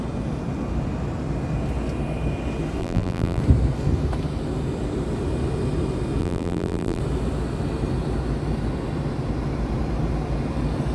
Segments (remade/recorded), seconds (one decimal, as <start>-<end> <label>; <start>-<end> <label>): 0.0-2.8 recorded; 2.8-3.4 remade; 3.4-6.2 recorded; 6.2-7.0 remade; 7.0-10.9 recorded